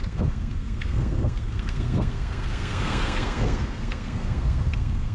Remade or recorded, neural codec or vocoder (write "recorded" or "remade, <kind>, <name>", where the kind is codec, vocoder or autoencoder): remade, codec, SNAC